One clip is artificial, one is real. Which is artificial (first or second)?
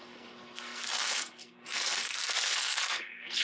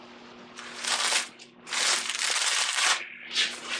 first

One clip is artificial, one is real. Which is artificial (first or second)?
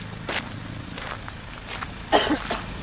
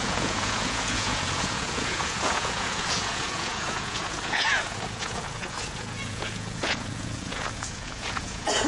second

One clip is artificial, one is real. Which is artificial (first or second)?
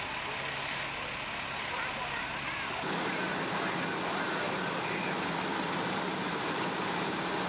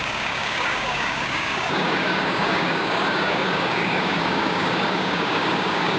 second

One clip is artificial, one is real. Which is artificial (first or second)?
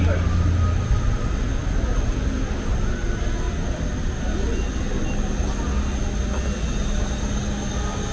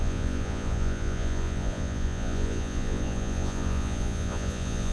second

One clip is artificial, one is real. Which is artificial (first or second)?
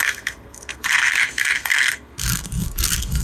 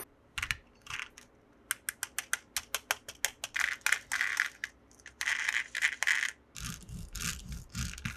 first